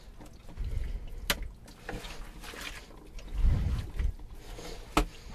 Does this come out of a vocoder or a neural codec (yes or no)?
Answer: no